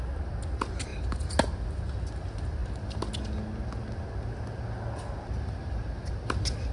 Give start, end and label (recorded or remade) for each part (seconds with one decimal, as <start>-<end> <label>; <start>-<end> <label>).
0.0-6.7 recorded